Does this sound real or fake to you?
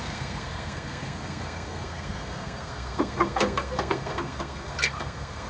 fake